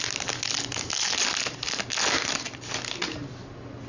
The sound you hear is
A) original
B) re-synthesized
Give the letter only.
A